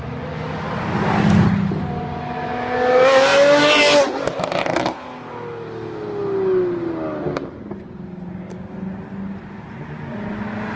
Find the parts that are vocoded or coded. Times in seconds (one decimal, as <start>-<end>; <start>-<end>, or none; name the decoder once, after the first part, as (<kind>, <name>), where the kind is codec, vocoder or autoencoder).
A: none